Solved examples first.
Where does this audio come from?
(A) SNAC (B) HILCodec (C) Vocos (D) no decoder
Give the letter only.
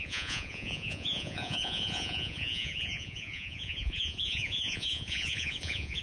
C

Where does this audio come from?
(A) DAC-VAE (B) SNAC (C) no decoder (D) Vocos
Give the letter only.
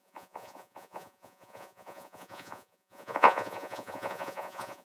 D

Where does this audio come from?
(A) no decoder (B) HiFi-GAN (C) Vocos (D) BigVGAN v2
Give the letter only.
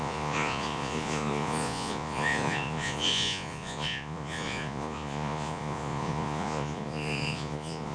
C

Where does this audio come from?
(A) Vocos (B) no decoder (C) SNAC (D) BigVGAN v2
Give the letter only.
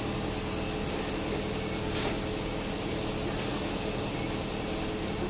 B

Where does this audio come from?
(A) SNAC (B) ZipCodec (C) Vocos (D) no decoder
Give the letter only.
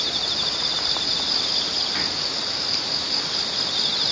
D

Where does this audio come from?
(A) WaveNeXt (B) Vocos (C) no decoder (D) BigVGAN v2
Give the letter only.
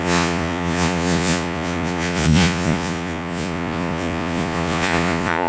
B